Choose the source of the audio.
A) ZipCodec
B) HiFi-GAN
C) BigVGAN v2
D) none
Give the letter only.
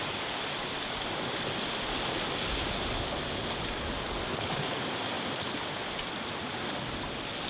D